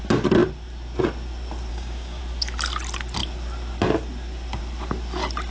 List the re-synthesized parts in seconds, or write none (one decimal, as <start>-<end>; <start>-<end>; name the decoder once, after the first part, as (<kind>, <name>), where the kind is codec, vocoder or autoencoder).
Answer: 1.7-2.2 (codec, DAC)